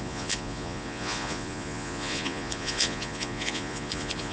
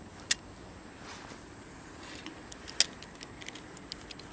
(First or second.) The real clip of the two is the second